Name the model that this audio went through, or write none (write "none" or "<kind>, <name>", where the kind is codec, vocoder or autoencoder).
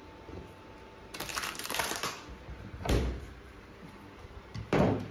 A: vocoder, BigVGAN v2